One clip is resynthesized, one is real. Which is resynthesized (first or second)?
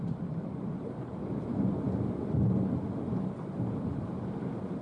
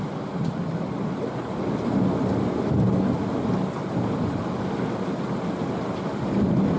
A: first